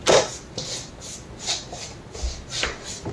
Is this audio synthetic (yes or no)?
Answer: no